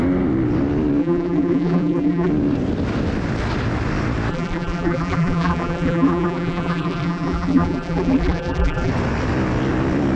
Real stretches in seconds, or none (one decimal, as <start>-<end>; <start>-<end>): 0.0-1.0; 2.3-4.3; 8.9-10.2